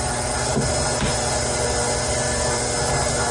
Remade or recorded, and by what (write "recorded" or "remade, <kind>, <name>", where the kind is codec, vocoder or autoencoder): recorded